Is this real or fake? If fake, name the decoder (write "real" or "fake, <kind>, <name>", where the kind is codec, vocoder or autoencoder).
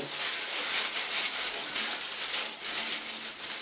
real